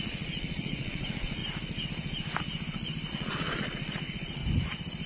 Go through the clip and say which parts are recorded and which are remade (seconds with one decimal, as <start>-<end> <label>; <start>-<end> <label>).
0.0-1.4 remade; 1.4-3.1 recorded; 3.1-4.4 remade; 4.4-5.1 recorded